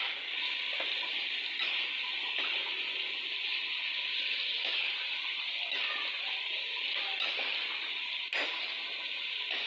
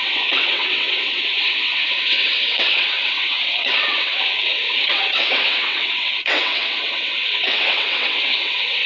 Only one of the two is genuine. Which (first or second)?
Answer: first